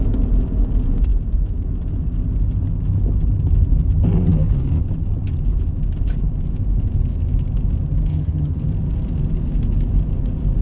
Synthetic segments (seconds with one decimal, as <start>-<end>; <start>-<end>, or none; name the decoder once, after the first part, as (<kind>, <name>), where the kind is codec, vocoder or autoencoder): 8.1-8.6 (vocoder, HiFi-GAN)